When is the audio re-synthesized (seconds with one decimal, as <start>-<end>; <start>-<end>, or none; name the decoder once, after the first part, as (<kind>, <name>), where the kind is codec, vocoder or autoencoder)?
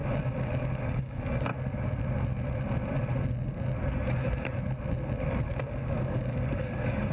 0.8-1.5 (codec, DAC); 5.6-7.1